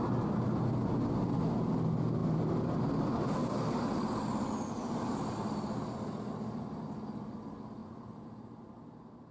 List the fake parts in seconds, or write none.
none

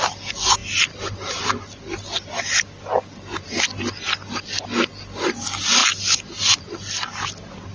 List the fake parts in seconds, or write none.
none

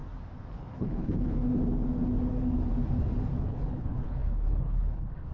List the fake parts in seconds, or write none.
0.5-1.4 (codec, HILCodec); 3.4-5.3

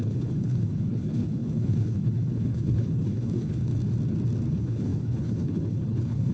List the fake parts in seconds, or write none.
0.0-3.7 (codec, HILCodec); 4.5-6.3

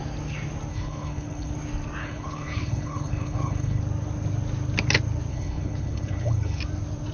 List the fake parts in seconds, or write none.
0.7-1.5 (codec, HILCodec); 2.0-3.8; 5.3-6.6

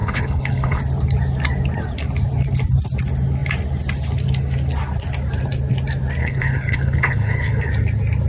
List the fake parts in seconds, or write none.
0.0-0.8 (codec, HILCodec); 6.2-7.7

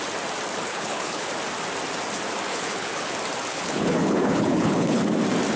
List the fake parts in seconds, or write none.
0.7-1.3 (codec, HILCodec); 2.5-3.1; 3.5-5.0